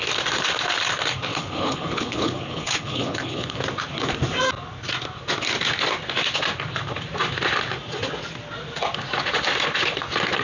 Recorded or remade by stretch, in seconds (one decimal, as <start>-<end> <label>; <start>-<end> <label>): 0.0-1.3 recorded; 1.3-3.6 remade; 3.6-10.4 recorded